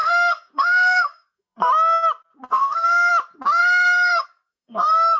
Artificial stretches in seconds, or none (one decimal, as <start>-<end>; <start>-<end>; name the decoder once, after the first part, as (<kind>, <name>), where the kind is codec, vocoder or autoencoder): 0.0-1.7 (codec, SNAC); 2.5-3.1; 3.6-5.2